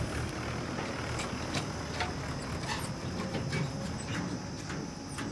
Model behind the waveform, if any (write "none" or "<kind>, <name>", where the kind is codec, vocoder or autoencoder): none